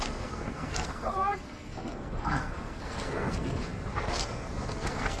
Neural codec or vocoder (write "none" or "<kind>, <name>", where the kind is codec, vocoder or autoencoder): codec, SNAC